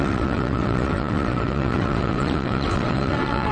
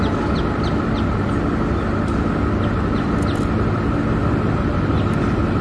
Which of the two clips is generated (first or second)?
first